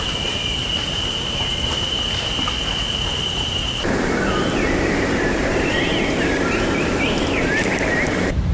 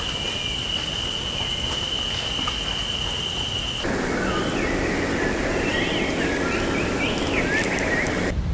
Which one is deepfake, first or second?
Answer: first